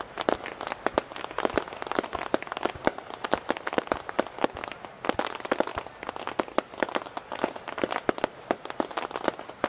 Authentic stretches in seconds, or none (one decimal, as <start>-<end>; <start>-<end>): 0.0-9.7